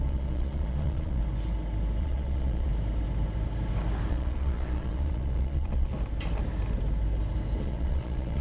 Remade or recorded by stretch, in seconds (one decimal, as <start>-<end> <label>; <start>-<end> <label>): 0.0-1.2 remade; 1.2-2.0 recorded; 2.0-2.7 remade; 2.7-4.1 recorded; 4.1-5.9 remade; 5.9-7.6 recorded; 7.6-8.4 remade